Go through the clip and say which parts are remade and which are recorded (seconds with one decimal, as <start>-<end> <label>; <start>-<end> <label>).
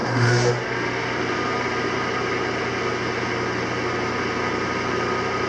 0.0-0.5 remade; 0.5-5.5 recorded